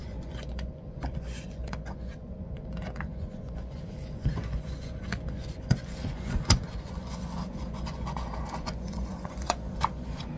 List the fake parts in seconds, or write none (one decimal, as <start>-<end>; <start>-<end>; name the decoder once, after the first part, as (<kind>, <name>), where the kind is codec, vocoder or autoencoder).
0.0-10.4 (vocoder, Vocos)